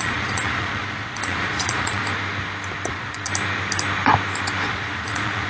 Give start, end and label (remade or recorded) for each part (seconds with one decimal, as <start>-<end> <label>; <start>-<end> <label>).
0.0-2.0 remade; 2.0-2.9 recorded; 2.9-3.3 remade; 3.3-4.7 recorded; 4.7-5.5 remade